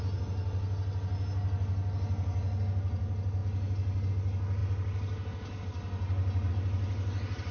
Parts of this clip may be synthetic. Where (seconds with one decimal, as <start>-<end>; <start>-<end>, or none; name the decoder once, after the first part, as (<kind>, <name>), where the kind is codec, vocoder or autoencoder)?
none